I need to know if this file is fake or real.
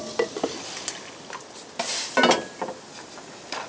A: real